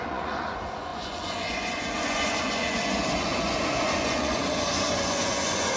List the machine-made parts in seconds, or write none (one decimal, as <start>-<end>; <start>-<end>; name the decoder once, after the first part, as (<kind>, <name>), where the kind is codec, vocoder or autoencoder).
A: 0.0-5.8 (vocoder, Vocos)